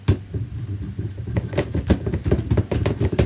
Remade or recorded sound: recorded